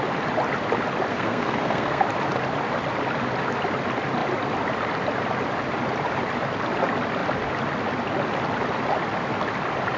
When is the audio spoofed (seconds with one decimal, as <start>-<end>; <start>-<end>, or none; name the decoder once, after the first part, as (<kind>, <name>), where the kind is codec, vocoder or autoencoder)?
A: 1.1-2.0 (codec, SNAC)